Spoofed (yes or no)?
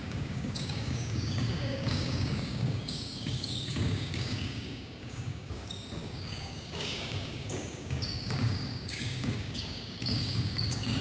yes